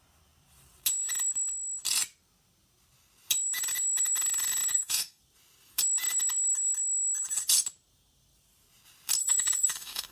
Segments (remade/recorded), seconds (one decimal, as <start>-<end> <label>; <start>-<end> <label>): 0.0-4.7 recorded; 4.7-5.2 remade; 5.2-9.2 recorded; 9.2-10.1 remade

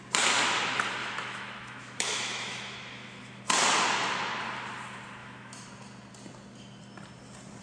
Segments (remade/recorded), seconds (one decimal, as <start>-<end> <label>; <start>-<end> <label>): 0.0-1.0 recorded; 1.0-3.4 remade; 3.4-5.2 recorded; 5.2-5.7 remade; 5.7-7.6 recorded

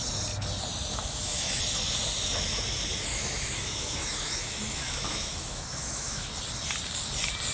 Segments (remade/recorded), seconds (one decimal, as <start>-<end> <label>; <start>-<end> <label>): 0.0-0.9 recorded; 0.9-1.6 remade; 1.6-3.1 recorded; 3.1-6.3 remade; 6.3-7.5 recorded

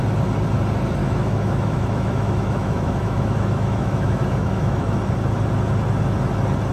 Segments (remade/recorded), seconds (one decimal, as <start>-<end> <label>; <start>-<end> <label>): 0.0-1.0 recorded; 1.0-5.0 remade; 5.0-6.7 recorded

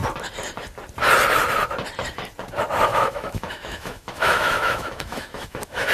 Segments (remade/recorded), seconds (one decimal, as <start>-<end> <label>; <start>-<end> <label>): 0.0-2.9 recorded; 2.9-5.9 remade

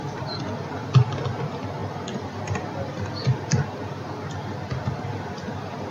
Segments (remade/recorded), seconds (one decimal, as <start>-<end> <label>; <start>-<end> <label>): 0.0-5.9 recorded

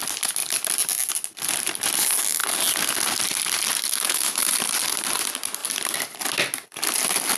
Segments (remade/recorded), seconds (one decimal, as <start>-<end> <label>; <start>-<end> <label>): 0.0-3.9 recorded; 3.9-4.5 remade; 4.5-7.4 recorded